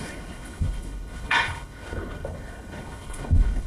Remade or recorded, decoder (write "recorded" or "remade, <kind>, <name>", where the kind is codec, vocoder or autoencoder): remade, codec, HILCodec